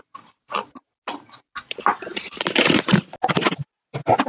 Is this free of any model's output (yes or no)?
yes